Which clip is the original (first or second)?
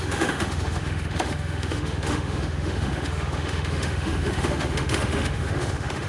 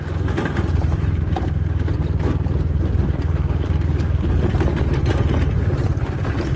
second